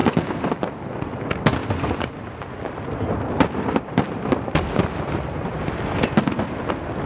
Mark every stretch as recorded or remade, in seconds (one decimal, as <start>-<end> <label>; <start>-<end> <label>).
0.0-0.9 remade; 0.9-1.6 recorded; 1.6-5.6 remade; 5.6-7.1 recorded